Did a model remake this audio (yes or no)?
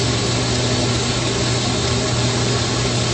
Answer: no